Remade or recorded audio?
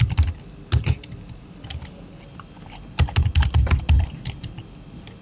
recorded